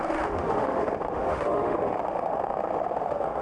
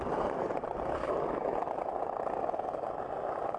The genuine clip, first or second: second